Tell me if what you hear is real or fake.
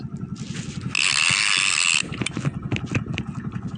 real